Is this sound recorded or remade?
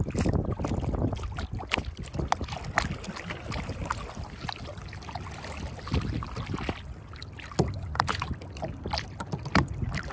recorded